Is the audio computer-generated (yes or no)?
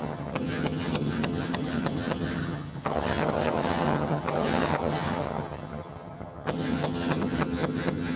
yes